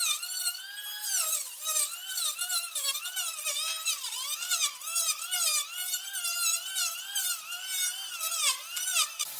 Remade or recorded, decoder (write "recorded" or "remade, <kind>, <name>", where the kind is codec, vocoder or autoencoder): recorded